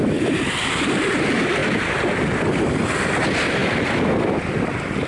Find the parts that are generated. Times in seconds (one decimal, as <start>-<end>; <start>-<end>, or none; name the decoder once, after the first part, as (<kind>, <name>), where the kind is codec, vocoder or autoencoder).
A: 0.0-5.1 (vocoder, BigVGAN v2)